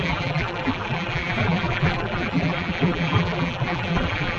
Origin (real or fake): fake